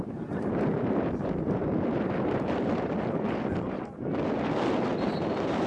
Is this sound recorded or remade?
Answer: remade